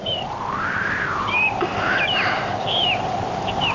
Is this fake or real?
fake